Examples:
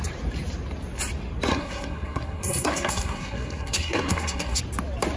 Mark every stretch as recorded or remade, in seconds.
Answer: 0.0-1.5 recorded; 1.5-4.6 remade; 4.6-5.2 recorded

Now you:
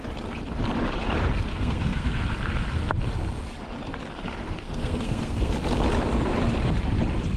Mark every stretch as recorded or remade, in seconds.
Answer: 0.0-1.5 recorded; 1.5-2.2 remade; 2.2-4.4 recorded; 4.4-5.5 remade; 5.5-7.4 recorded

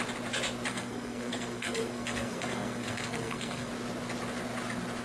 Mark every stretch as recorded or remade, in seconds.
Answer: 0.0-0.7 recorded; 0.7-3.7 remade; 3.7-5.0 recorded

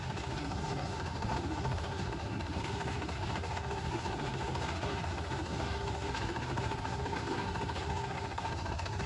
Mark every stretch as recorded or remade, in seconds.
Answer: 0.0-9.1 remade

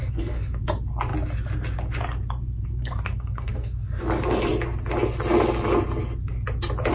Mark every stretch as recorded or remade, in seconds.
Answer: 0.0-0.6 remade; 0.6-2.7 recorded; 2.7-4.0 remade; 4.0-6.9 recorded

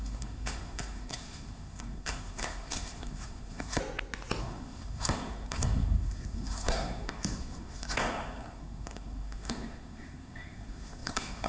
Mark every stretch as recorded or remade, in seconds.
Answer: 0.0-3.8 remade; 3.8-4.4 recorded; 4.4-11.5 remade